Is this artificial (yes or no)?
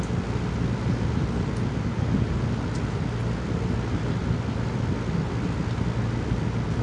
no